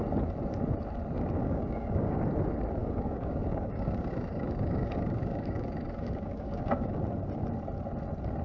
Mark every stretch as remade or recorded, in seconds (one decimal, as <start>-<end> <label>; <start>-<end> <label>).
0.0-1.4 recorded; 1.4-2.2 remade; 2.2-2.8 recorded; 2.8-7.0 remade; 7.0-8.4 recorded